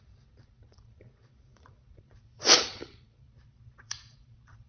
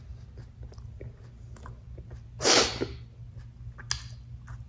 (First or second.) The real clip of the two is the second